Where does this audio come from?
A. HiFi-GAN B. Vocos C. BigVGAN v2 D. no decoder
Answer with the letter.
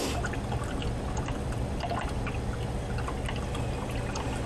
D